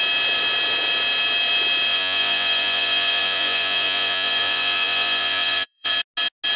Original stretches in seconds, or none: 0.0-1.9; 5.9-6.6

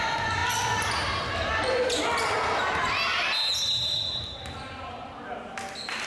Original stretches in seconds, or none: 0.0-6.1